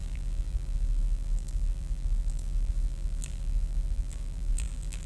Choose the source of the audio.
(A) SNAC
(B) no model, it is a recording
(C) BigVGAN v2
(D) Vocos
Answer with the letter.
C